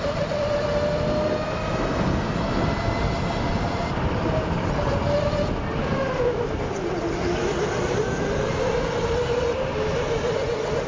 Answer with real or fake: real